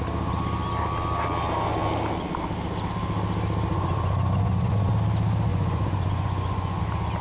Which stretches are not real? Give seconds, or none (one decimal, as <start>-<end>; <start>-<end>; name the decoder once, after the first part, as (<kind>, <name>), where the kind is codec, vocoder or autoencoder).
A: 3.7-4.9 (vocoder, Vocos); 5.5-6.8